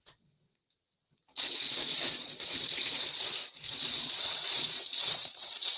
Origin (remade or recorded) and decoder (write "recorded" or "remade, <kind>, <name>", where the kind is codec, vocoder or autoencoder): remade, vocoder, Vocos